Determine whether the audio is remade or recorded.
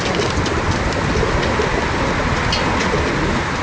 recorded